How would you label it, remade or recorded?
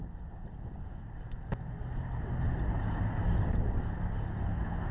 recorded